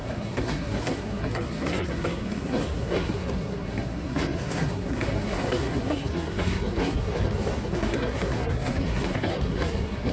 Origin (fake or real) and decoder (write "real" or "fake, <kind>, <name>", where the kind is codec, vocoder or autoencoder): fake, codec, SNAC